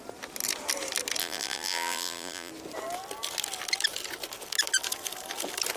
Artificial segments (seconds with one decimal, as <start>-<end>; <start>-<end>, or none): 1.2-2.5